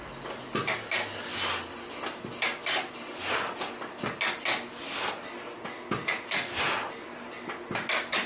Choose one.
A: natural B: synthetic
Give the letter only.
A